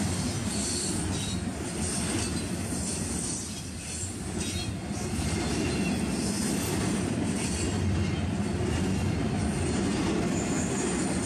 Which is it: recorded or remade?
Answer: recorded